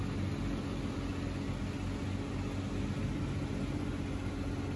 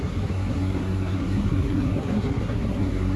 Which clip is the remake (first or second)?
second